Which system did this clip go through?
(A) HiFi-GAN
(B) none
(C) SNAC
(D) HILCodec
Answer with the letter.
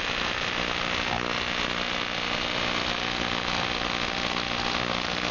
B